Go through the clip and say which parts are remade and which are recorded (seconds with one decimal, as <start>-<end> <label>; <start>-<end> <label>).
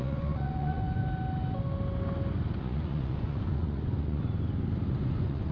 0.0-1.0 remade; 1.0-2.6 recorded; 2.6-4.2 remade; 4.2-4.9 recorded; 4.9-5.5 remade